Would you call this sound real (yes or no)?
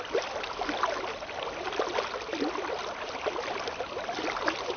yes